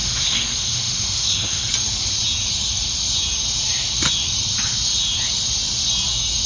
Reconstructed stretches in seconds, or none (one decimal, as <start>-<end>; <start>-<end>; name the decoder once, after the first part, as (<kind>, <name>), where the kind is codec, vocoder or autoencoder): 0.0-1.7 (autoencoder, DAC-VAE)